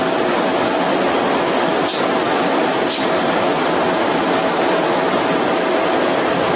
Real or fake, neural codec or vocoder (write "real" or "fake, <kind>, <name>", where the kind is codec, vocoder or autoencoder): real